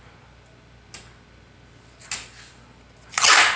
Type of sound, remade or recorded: recorded